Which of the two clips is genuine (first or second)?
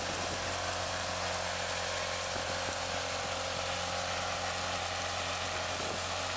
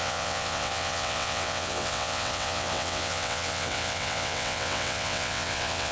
first